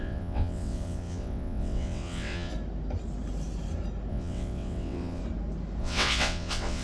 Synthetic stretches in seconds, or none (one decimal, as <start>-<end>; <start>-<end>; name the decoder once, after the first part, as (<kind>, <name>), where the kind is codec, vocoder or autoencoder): 0.0-2.5 (vocoder, WaveNeXt); 4.1-5.2; 5.8-6.8